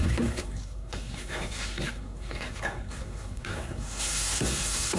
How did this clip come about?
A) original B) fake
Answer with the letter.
B